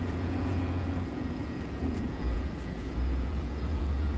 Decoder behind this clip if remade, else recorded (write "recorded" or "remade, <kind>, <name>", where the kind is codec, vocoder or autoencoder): remade, vocoder, Vocos